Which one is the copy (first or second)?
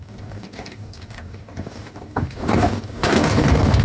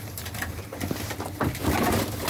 first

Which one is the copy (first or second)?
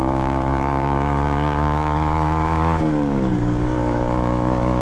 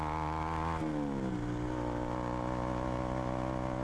first